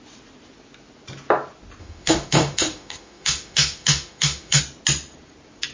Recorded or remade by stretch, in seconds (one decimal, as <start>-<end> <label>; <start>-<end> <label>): 0.0-1.8 recorded; 1.8-4.6 remade; 4.6-5.7 recorded